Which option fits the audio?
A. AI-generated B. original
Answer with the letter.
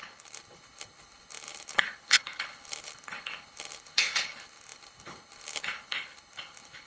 A